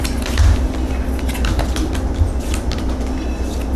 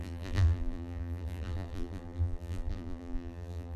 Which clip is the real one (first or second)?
first